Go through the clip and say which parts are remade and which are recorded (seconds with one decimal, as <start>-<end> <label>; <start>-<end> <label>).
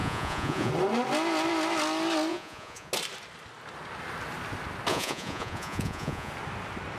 0.0-0.7 remade; 0.7-2.3 recorded; 2.3-2.9 remade; 2.9-4.9 recorded; 4.9-6.3 remade; 6.3-7.0 recorded